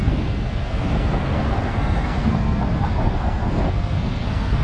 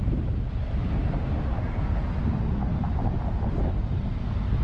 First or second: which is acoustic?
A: second